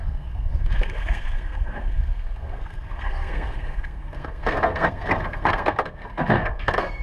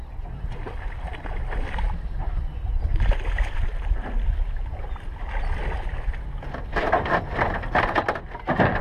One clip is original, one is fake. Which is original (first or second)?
second